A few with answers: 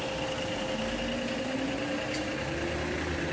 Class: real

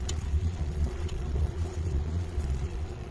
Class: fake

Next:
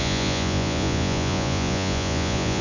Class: fake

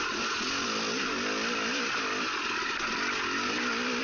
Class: real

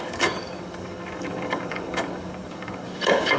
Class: fake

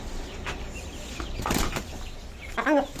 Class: real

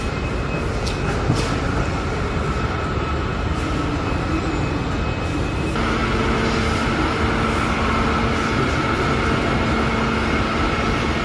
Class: real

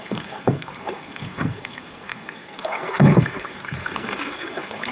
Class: fake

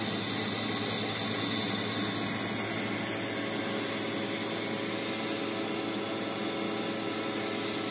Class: real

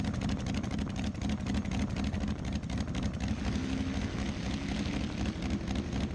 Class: real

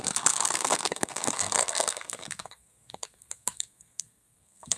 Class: fake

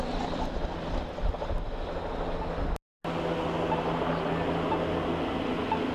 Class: real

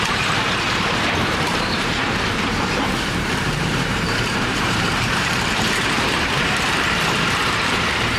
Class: fake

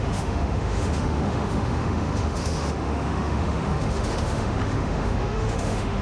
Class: fake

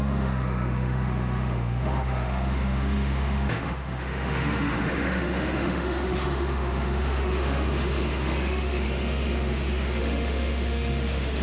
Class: fake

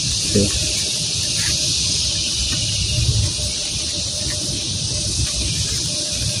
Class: real